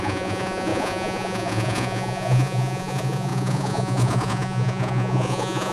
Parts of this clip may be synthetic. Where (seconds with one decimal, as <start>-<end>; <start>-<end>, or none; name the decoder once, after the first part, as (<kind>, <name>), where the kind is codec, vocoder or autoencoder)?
0.0-5.7 (vocoder, Vocos)